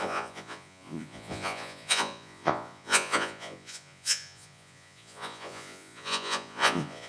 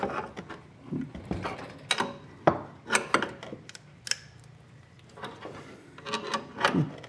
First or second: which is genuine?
second